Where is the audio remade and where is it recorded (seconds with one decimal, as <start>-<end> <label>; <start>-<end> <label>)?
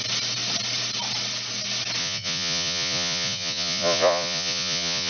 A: 0.0-2.0 recorded; 2.0-5.1 remade